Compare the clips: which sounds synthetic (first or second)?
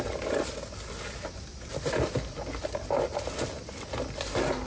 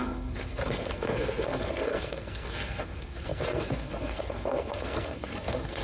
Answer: second